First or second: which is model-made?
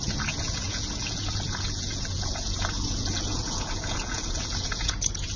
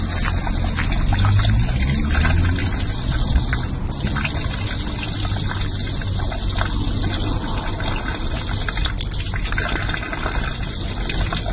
first